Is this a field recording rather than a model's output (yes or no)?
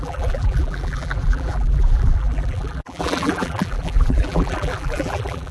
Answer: no